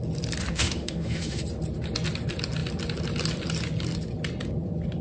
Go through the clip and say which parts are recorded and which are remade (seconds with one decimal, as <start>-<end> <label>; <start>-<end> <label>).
0.0-0.5 recorded; 0.5-1.4 remade; 1.4-5.0 recorded